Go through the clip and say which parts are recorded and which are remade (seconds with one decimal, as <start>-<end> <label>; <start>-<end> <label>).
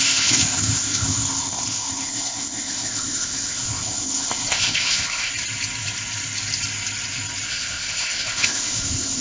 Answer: 0.0-5.3 remade; 5.3-7.5 recorded; 7.5-9.2 remade